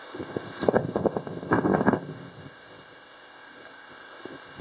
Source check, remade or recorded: remade